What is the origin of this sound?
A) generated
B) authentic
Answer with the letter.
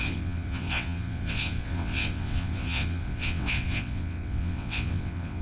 A